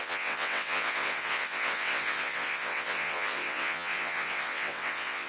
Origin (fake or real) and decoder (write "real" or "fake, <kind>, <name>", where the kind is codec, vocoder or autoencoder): fake, vocoder, WaveNeXt